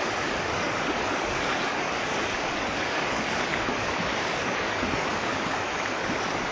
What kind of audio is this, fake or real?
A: fake